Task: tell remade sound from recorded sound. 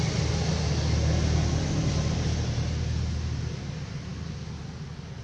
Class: recorded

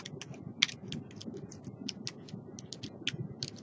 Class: recorded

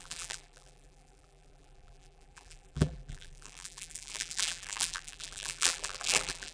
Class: remade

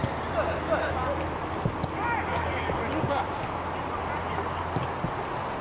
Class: recorded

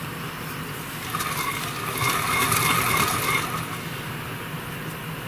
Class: recorded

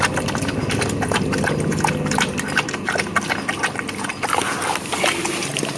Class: recorded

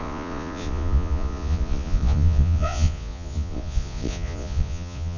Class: remade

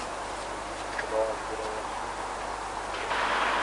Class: recorded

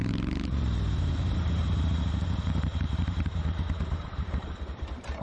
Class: remade